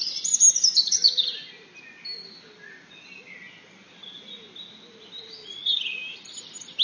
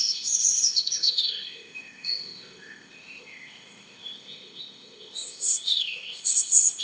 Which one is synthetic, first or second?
second